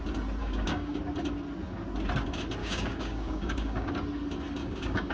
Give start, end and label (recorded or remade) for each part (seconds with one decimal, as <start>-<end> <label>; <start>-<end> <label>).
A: 0.0-0.4 recorded; 0.4-1.0 remade; 1.0-2.6 recorded; 2.6-3.9 remade; 3.9-4.6 recorded; 4.6-5.1 remade